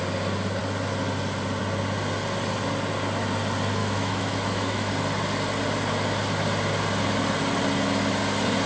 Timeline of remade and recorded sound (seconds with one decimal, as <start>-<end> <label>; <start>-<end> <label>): 0.0-3.8 recorded; 3.8-4.9 remade; 4.9-8.7 recorded